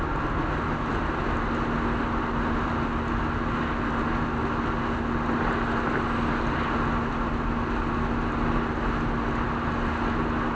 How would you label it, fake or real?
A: real